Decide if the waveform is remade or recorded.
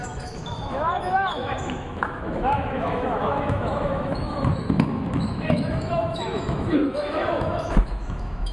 remade